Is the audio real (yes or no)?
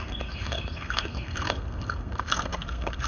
no